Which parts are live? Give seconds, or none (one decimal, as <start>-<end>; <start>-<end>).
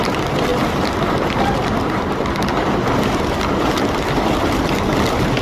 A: 0.0-5.4